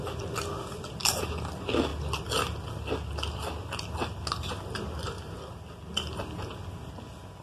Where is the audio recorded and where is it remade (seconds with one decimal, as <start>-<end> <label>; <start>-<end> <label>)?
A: 0.0-7.4 recorded